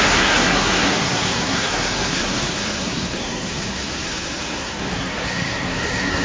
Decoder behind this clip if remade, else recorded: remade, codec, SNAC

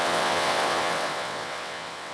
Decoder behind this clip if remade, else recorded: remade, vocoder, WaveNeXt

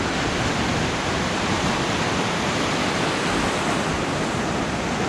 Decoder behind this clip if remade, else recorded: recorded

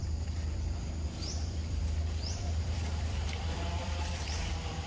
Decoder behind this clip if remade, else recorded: remade, vocoder, BigVGAN v2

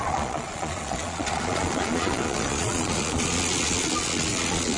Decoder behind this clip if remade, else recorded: remade, vocoder, Vocos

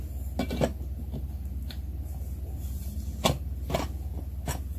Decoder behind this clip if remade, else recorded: recorded